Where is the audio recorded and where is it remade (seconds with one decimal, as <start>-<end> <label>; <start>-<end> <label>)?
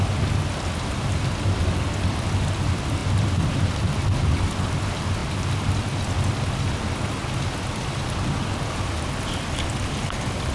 0.0-10.5 recorded